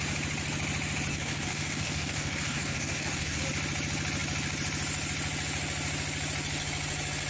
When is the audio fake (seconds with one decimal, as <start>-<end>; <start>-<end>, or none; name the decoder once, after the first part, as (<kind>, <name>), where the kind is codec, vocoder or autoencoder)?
1.1-3.4 (codec, DAC)